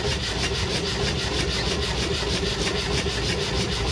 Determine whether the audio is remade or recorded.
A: recorded